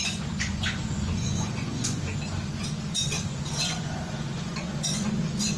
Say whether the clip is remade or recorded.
remade